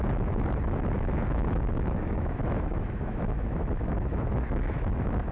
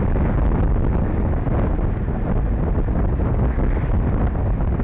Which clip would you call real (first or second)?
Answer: second